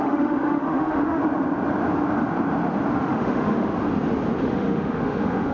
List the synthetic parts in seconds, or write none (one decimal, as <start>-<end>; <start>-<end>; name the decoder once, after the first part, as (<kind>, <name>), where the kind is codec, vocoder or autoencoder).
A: 0.0-1.2 (autoencoder, DAC-VAE); 3.0-3.7; 4.4-5.5